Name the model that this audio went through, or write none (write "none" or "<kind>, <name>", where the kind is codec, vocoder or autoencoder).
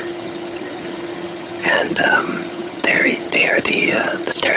vocoder, HiFi-GAN